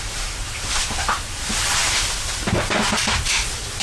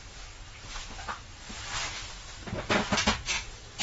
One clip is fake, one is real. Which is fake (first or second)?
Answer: first